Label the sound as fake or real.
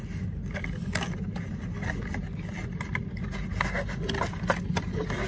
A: real